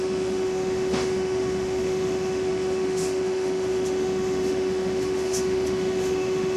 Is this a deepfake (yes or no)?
yes